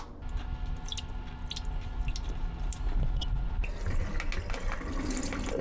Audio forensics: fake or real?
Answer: real